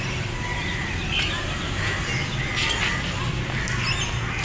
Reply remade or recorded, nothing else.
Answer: recorded